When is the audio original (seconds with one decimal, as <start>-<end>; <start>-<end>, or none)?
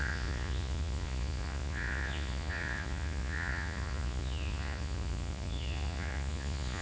none